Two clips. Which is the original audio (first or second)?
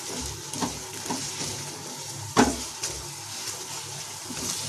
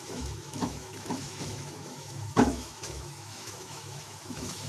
first